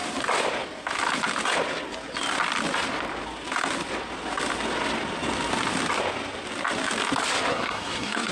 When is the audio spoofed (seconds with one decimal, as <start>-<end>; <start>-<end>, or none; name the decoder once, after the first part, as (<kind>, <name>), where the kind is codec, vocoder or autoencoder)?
7.5-8.3 (codec, SNAC)